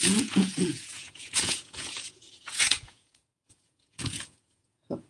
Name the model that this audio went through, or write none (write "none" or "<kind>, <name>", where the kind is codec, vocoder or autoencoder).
vocoder, Vocos